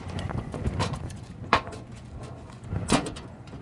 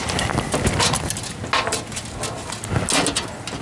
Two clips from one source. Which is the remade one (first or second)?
first